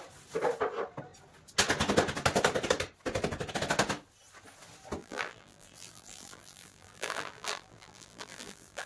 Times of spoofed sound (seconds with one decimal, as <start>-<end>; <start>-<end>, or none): 5.0-8.9